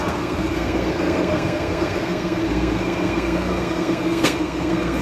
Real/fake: fake